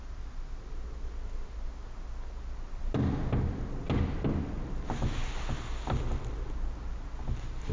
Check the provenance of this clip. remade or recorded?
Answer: recorded